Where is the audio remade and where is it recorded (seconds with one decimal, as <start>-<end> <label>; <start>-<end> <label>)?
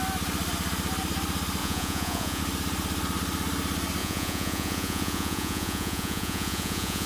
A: 0.0-1.6 recorded; 1.6-2.4 remade; 2.4-4.0 recorded; 4.0-7.1 remade